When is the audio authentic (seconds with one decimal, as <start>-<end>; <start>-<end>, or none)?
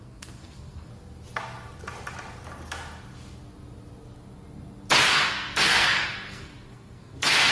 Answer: 0.9-5.1